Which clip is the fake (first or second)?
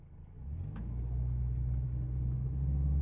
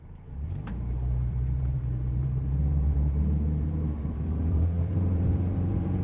second